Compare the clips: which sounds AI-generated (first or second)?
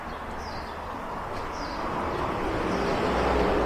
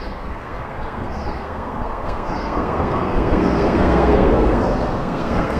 second